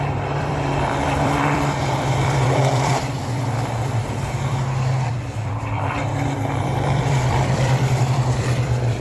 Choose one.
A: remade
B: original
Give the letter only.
A